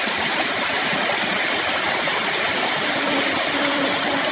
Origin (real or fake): real